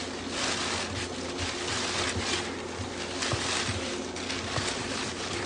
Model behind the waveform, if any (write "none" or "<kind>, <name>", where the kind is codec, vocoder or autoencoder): none